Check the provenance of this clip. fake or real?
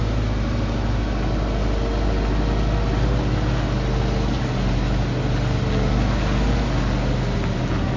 real